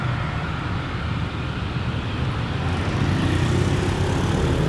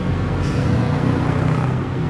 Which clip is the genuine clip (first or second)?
first